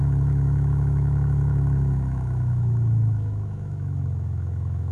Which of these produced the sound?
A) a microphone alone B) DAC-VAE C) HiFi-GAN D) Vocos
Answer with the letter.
B